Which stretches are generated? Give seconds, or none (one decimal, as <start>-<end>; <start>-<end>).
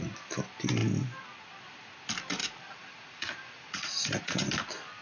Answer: 2.4-4.5